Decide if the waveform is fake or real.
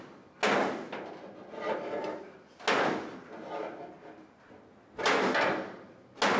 real